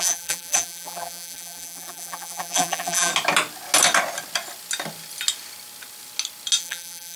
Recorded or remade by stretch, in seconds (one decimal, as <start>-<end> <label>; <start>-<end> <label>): 0.0-3.1 remade; 3.1-6.6 recorded; 6.6-7.2 remade